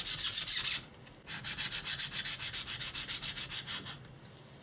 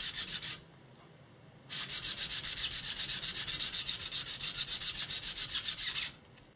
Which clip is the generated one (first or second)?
second